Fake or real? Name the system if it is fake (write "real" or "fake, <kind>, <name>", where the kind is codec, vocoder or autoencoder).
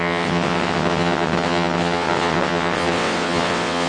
fake, vocoder, WaveNeXt